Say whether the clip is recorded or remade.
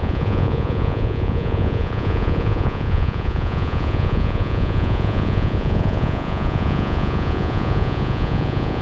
remade